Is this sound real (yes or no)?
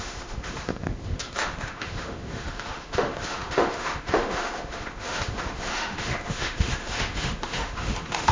no